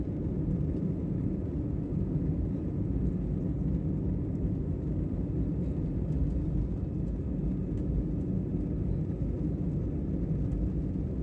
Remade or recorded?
recorded